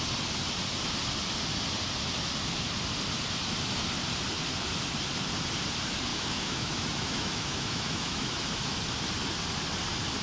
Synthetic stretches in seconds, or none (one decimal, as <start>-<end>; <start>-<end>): 6.1-8.8